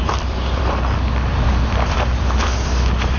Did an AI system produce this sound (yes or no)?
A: yes